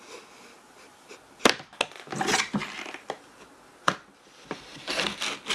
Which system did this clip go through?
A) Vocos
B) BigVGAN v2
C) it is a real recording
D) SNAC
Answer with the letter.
C